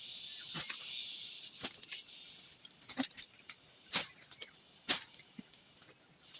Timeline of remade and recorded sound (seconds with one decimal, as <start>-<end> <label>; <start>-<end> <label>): 0.0-6.4 recorded